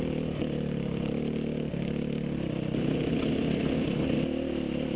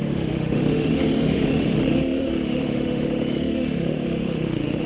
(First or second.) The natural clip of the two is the first